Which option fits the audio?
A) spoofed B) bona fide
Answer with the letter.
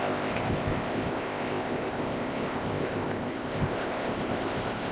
A